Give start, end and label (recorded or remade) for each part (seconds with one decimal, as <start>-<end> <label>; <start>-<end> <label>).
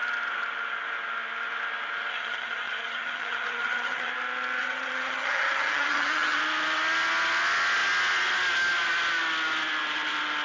0.0-2.1 recorded; 2.1-4.1 remade; 4.1-4.6 recorded; 4.6-6.4 remade; 6.4-10.4 recorded